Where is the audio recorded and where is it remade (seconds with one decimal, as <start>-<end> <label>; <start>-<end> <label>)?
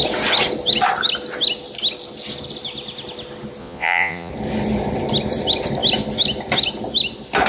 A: 0.0-3.6 recorded; 3.6-4.3 remade; 4.3-7.5 recorded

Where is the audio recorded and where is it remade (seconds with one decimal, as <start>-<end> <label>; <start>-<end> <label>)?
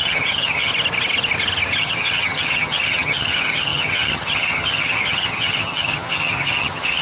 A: 0.0-0.7 remade; 0.7-1.8 recorded; 1.8-7.0 remade